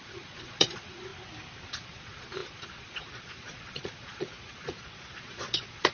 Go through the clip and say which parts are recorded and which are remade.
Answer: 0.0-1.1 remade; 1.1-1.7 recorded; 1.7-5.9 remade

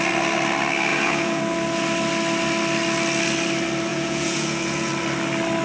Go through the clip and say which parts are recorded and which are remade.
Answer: 0.0-0.9 recorded; 0.9-1.4 remade; 1.4-3.9 recorded; 3.9-4.9 remade; 4.9-5.6 recorded

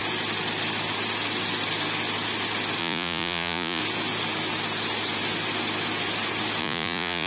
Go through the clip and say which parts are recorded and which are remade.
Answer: 0.0-2.8 recorded; 2.8-3.8 remade; 3.8-6.6 recorded; 6.6-7.3 remade

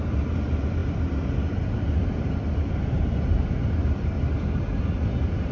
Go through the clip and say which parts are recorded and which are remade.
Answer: 0.0-5.5 recorded